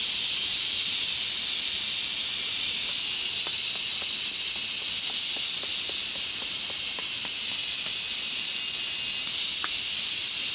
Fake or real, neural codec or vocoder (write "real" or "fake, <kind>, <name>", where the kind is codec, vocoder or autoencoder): real